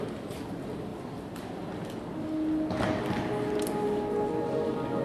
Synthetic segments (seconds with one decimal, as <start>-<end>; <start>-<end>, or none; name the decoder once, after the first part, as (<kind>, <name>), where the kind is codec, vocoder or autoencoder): none